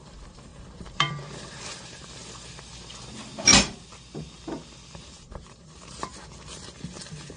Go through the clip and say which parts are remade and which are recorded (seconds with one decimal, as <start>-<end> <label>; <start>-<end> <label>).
0.0-2.2 remade; 2.2-4.9 recorded; 4.9-6.1 remade; 6.1-7.4 recorded